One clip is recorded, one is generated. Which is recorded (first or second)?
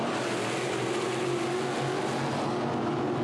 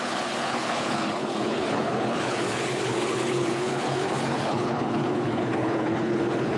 first